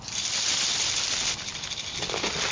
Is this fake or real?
real